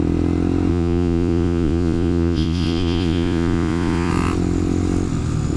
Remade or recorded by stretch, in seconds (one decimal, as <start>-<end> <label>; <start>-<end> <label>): 0.0-0.7 recorded; 0.7-4.1 remade; 4.1-5.6 recorded